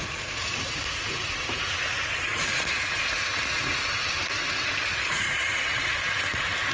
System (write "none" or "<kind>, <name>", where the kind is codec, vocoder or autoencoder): vocoder, Vocos